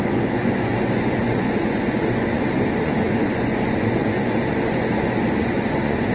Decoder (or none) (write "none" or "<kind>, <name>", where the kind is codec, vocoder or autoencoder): vocoder, Vocos